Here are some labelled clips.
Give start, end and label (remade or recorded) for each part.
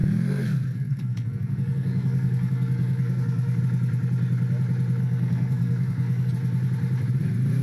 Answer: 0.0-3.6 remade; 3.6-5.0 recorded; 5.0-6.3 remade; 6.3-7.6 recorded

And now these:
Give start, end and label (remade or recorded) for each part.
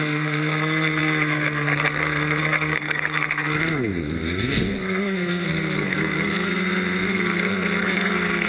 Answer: 0.0-8.5 remade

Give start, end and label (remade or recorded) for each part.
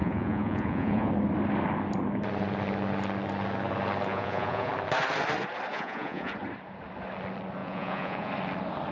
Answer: 0.0-1.1 remade; 1.1-4.1 recorded; 4.1-4.7 remade; 4.7-5.7 recorded; 5.7-6.3 remade; 6.3-7.6 recorded; 7.6-8.3 remade; 8.3-8.9 recorded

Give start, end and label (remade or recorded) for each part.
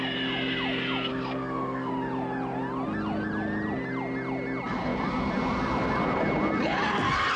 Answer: 0.0-1.1 recorded; 1.1-1.9 remade; 1.9-7.4 recorded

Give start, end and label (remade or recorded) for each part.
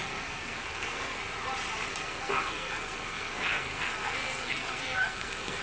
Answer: 0.0-1.2 remade; 1.2-1.9 recorded; 1.9-5.6 remade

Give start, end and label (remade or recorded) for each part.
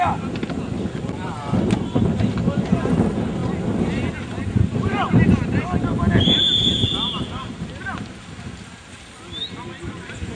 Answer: 0.0-10.3 recorded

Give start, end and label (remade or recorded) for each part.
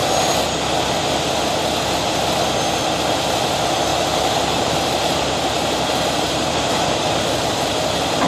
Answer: 0.0-3.9 recorded; 3.9-8.3 remade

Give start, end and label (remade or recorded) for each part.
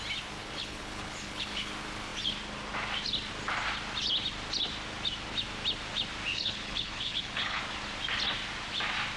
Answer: 0.0-0.4 recorded; 0.4-1.7 remade; 1.7-6.3 recorded; 6.3-7.6 remade; 7.6-9.2 recorded